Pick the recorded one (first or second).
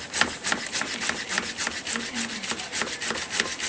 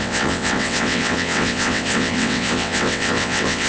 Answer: first